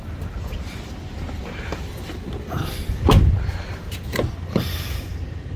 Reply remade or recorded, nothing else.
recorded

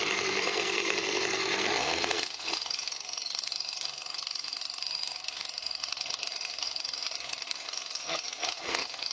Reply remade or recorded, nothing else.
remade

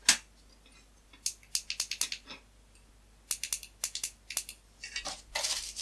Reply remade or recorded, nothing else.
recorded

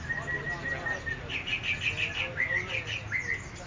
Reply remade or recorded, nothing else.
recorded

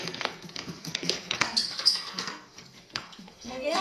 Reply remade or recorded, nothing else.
remade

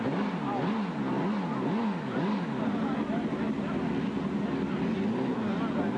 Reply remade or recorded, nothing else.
recorded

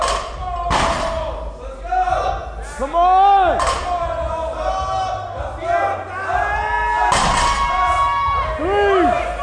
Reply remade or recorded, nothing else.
recorded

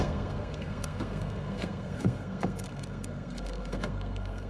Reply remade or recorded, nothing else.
remade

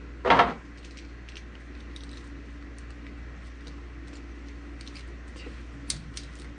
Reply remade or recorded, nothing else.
recorded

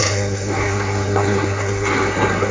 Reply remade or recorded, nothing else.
remade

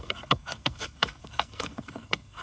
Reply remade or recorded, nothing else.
remade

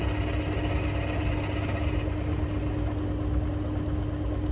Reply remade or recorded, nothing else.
recorded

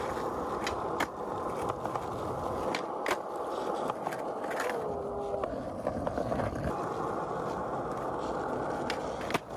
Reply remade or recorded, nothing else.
recorded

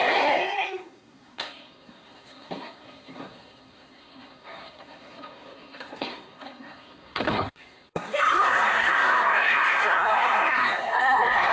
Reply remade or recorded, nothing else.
remade